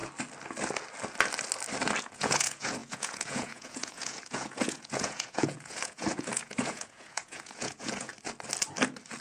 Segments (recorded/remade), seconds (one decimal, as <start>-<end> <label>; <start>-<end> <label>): 0.0-2.0 recorded; 2.0-8.1 remade; 8.1-9.2 recorded